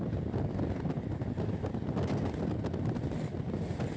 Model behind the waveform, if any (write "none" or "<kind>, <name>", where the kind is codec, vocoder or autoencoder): none